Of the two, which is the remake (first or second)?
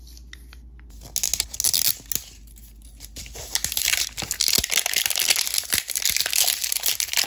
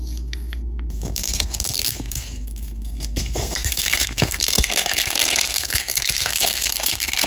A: second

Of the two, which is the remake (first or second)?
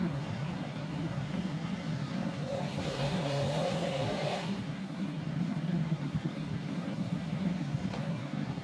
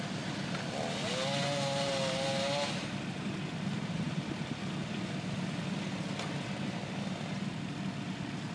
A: first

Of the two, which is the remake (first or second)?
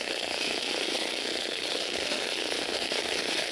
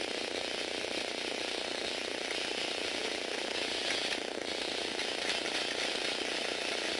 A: first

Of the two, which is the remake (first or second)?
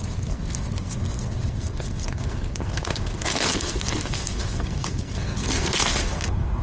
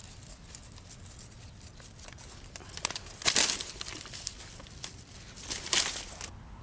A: first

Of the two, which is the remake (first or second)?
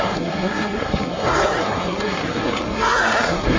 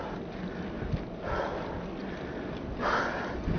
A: first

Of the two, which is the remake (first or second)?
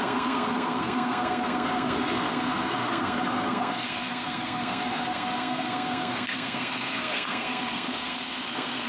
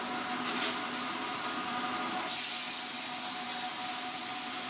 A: first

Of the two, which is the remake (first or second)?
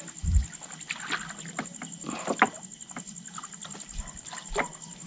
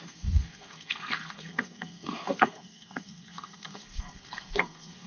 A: second